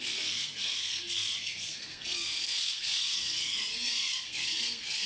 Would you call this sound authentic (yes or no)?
no